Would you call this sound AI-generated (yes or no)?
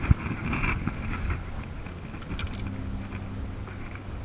no